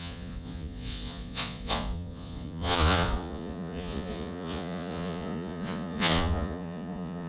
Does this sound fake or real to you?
fake